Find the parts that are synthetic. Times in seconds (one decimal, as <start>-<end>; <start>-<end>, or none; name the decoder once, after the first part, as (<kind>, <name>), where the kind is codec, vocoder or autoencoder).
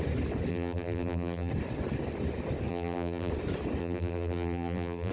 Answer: 0.5-1.5 (vocoder, BigVGAN v2); 2.7-3.3; 3.8-5.1